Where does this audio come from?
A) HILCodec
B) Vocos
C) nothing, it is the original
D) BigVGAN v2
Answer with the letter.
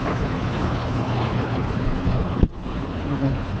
A